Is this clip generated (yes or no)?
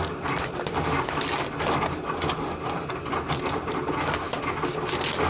no